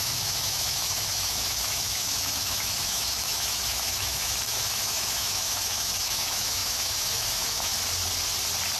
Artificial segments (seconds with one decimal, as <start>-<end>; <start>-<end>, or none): 0.0-7.7